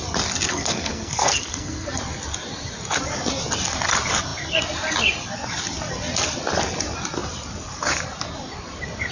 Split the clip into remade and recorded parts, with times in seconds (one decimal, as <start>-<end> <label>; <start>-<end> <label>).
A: 0.0-0.5 recorded; 0.5-2.0 remade; 2.0-9.1 recorded